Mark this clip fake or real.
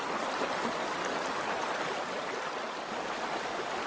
real